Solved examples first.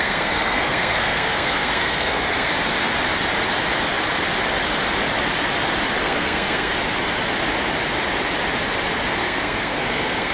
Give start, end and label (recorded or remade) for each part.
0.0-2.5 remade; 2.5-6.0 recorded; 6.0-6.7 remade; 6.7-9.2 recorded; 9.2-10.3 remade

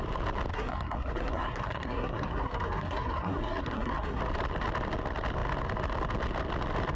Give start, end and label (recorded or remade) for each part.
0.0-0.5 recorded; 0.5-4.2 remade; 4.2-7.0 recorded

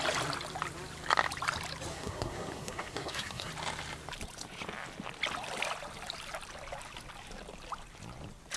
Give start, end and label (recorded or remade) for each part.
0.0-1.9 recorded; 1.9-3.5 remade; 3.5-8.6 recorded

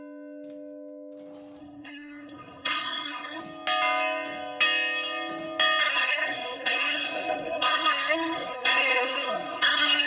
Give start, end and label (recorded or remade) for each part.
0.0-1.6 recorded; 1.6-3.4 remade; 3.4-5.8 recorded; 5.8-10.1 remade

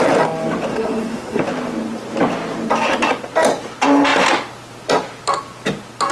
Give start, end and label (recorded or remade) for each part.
0.0-0.7 recorded; 0.7-1.4 remade; 1.4-6.1 recorded